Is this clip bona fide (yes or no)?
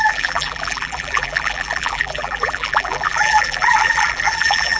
no